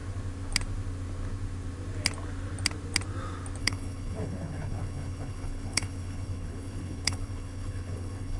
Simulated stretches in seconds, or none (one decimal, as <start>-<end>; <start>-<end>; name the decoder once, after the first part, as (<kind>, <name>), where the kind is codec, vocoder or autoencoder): 3.6-8.4 (codec, HILCodec)